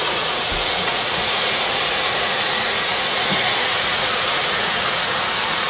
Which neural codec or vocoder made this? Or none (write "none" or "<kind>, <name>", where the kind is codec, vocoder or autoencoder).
vocoder, Vocos